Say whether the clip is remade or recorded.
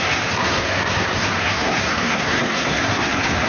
remade